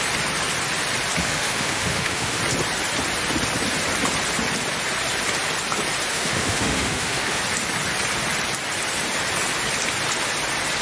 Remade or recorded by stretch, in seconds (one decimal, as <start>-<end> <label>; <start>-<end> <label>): 0.0-1.2 recorded; 1.2-2.4 remade; 2.4-6.1 recorded; 6.1-7.4 remade; 7.4-10.8 recorded

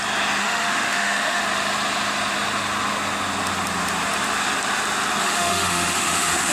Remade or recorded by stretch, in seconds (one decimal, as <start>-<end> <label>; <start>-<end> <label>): 0.0-0.4 recorded; 0.4-1.4 remade; 1.4-5.2 recorded; 5.2-6.5 remade

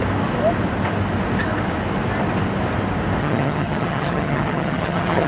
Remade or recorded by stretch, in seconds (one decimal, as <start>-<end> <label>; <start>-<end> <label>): 0.0-3.2 recorded; 3.2-5.3 remade

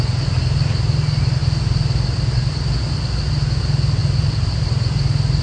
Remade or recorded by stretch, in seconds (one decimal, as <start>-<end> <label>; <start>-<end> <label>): 0.0-4.0 recorded; 4.0-5.4 remade